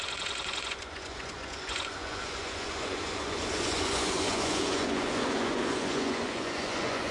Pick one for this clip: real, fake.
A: fake